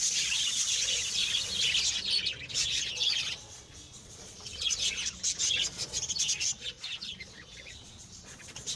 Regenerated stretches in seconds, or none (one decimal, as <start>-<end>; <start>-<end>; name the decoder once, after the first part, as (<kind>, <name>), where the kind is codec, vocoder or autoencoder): 0.0-1.2 (vocoder, Vocos); 2.5-5.0; 5.6-8.8